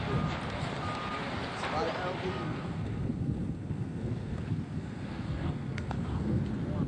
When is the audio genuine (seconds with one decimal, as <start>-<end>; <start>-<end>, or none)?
0.0-2.3; 6.4-6.9